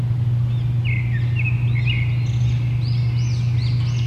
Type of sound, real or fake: real